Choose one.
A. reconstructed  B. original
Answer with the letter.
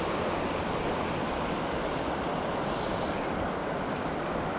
B